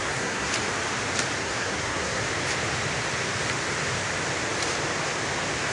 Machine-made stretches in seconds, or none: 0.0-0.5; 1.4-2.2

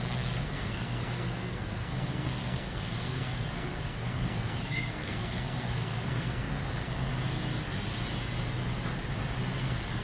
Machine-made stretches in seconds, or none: 0.0-7.1; 9.6-10.0

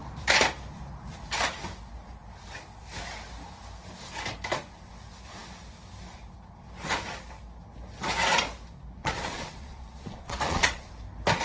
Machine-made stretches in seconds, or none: 9.0-10.9

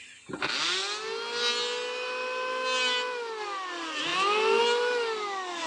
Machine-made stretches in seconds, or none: none